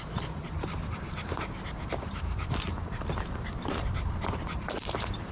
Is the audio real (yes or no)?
no